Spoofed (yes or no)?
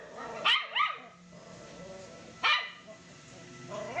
no